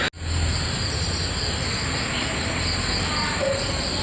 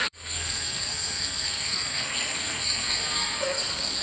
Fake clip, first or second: second